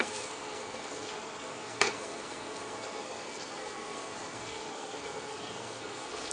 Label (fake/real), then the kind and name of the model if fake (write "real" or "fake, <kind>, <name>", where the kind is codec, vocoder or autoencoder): fake, codec, SNAC